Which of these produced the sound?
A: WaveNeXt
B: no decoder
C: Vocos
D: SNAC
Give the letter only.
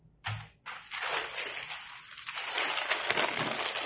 B